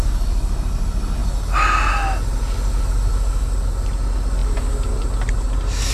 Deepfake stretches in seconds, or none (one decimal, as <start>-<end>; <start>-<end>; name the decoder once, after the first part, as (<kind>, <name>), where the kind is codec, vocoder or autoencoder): none